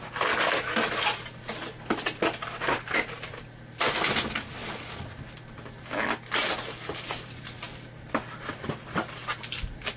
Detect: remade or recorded recorded